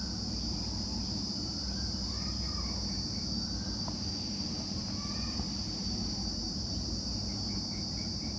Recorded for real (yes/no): no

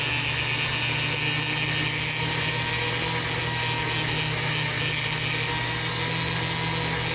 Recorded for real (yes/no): yes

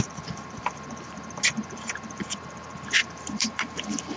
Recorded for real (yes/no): no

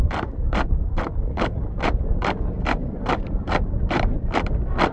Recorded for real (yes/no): no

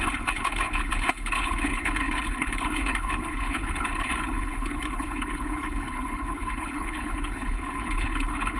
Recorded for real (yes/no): no